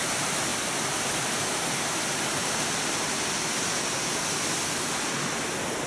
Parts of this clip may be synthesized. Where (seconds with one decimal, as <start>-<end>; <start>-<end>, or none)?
none